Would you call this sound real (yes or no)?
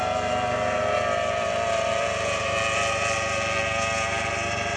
yes